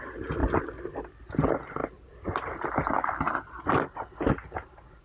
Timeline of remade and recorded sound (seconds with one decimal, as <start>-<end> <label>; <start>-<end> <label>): 0.0-5.0 recorded